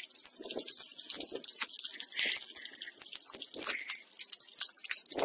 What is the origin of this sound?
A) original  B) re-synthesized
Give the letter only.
A